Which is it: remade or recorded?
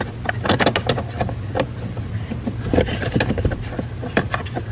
recorded